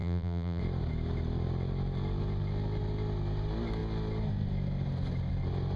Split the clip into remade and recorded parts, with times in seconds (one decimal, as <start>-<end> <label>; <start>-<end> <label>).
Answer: 0.0-0.6 remade; 0.6-5.8 recorded